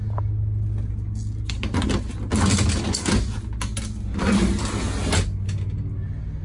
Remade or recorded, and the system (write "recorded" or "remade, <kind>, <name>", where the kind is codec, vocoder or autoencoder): recorded